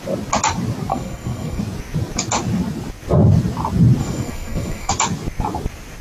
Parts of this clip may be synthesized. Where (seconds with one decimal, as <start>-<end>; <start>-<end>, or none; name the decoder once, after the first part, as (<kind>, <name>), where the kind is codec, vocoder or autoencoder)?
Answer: 0.9-1.6 (codec, SNAC); 4.0-4.9